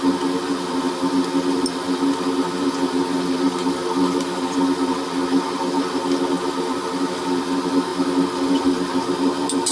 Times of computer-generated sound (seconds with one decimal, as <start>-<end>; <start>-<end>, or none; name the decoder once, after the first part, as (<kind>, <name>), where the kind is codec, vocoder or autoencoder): none